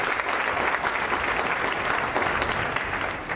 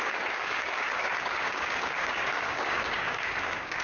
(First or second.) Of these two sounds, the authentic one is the first